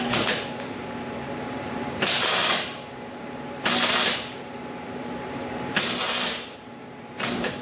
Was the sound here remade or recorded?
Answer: remade